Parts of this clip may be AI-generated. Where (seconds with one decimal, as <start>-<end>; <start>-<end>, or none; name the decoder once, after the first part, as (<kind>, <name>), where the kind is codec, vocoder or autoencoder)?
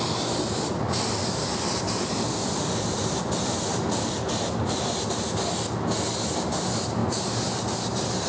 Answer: 2.3-5.0 (vocoder, BigVGAN v2); 7.0-7.7